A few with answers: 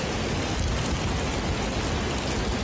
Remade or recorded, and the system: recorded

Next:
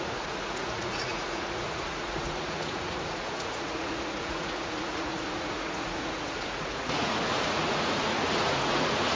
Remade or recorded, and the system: remade, vocoder, Vocos